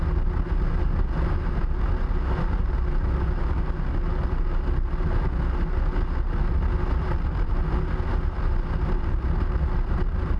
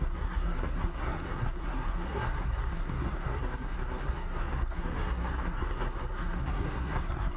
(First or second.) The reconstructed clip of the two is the second